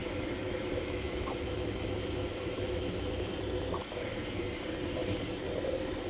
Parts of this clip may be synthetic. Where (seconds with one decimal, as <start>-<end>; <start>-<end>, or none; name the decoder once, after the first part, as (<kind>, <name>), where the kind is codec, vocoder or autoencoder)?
0.0-3.3 (autoencoder, DAC-VAE)